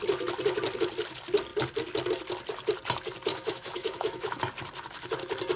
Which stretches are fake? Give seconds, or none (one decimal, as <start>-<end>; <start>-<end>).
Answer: 3.3-4.4